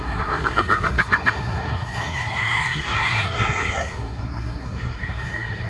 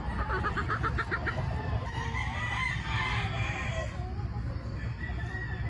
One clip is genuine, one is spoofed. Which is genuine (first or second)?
second